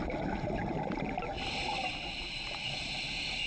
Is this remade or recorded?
recorded